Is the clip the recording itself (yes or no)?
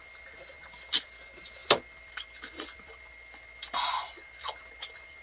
yes